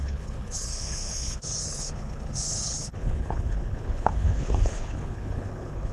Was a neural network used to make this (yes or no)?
yes